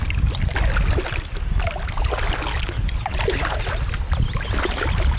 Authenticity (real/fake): real